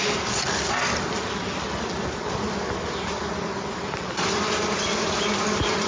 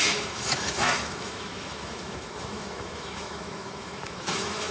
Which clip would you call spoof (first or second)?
second